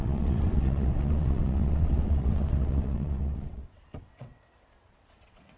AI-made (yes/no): yes